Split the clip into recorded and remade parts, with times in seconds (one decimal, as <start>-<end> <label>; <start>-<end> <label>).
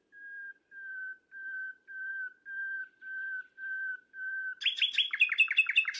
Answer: 0.0-6.0 recorded